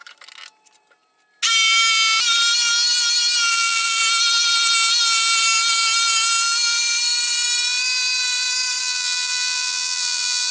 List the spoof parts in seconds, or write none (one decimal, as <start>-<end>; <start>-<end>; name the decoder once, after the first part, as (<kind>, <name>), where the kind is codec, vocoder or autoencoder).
3.5-4.0 (vocoder, BigVGAN v2); 8.8-10.5